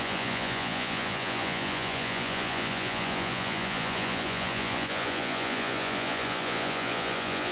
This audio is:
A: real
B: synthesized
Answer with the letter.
B